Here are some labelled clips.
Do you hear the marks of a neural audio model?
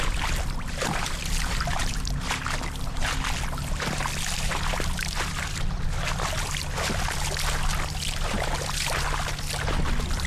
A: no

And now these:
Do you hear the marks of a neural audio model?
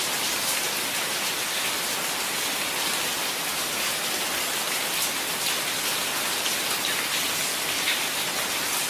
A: no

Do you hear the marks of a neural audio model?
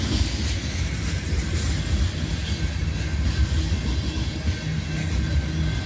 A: no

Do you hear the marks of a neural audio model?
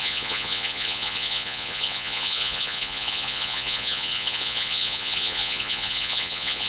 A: yes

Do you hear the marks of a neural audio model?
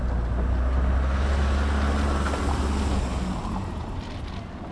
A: no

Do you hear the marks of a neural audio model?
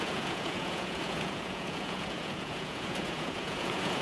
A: yes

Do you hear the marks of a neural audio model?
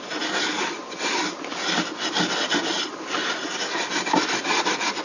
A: no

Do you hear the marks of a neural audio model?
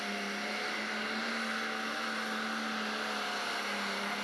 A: no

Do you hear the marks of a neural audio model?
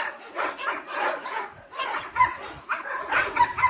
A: yes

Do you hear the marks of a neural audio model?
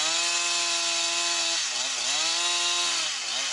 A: no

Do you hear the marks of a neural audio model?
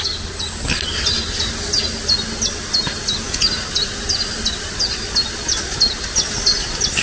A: no